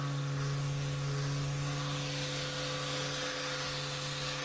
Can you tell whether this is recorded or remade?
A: recorded